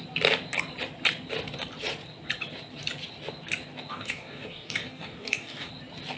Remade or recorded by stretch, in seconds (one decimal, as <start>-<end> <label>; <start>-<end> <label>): 0.0-3.9 recorded; 3.9-5.7 remade; 5.7-6.2 recorded